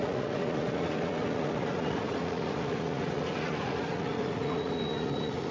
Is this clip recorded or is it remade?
remade